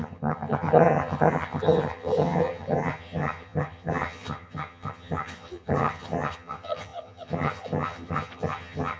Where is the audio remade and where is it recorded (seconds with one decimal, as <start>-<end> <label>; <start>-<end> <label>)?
0.0-9.0 remade